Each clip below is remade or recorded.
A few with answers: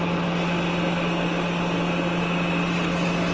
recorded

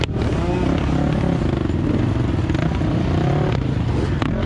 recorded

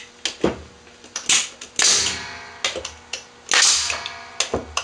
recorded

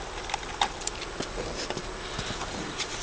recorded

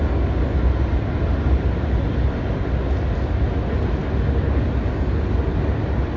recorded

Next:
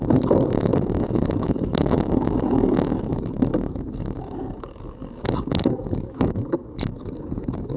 remade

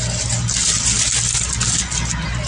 recorded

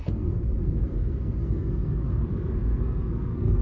remade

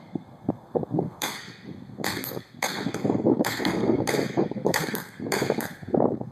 remade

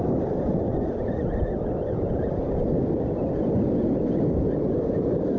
remade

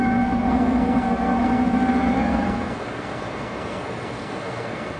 remade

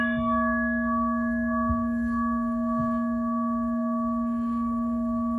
remade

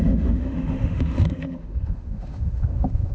remade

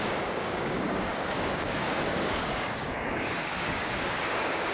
remade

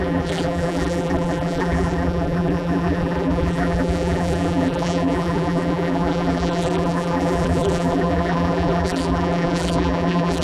remade